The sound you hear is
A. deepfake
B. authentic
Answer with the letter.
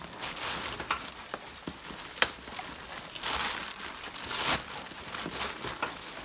B